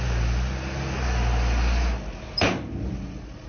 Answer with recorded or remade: recorded